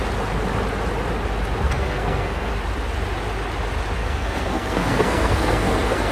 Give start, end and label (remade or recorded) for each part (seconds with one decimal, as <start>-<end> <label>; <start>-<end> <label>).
0.0-1.6 recorded; 1.6-2.5 remade; 2.5-4.0 recorded; 4.0-6.1 remade